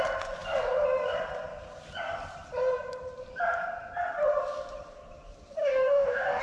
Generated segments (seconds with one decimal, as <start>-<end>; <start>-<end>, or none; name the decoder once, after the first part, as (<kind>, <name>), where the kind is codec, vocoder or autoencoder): 5.6-6.4 (codec, DAC)